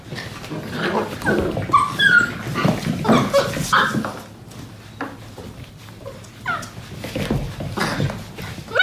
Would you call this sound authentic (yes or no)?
yes